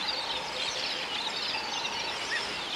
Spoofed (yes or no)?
no